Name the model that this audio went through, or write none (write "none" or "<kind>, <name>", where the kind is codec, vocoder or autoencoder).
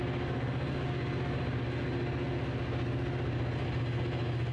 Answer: none